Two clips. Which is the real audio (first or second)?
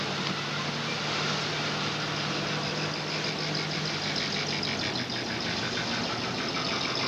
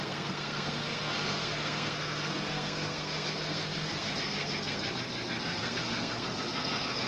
first